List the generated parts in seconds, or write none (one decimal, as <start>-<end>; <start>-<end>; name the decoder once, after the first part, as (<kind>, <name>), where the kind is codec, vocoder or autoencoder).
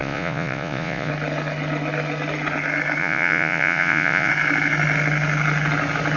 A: 0.0-1.1 (vocoder, Vocos); 3.0-4.3